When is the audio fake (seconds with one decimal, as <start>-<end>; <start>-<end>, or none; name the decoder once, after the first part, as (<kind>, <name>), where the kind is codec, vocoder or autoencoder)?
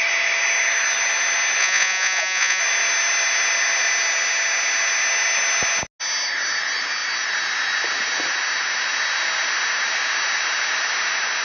1.6-2.6 (vocoder, Vocos)